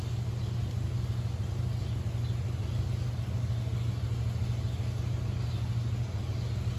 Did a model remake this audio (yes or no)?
no